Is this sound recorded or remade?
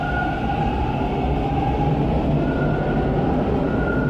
recorded